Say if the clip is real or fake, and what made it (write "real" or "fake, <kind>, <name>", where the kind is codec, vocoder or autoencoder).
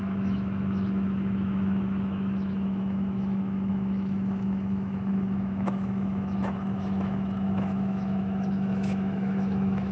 fake, autoencoder, DAC-VAE